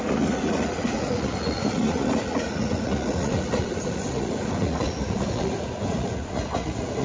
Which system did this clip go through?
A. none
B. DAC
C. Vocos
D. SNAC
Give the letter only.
C